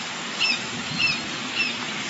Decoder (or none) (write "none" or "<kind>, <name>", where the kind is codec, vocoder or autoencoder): none